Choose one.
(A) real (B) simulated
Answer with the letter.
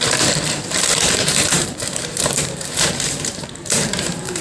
B